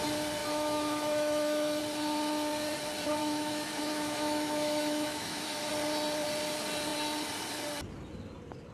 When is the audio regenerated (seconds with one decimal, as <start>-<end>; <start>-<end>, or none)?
0.4-1.8; 3.2-5.7